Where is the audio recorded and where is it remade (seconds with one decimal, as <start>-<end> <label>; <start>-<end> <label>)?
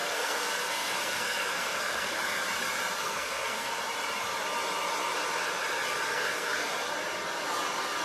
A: 0.0-2.2 remade; 2.2-3.0 recorded; 3.0-3.7 remade; 3.7-6.1 recorded; 6.1-6.7 remade; 6.7-8.0 recorded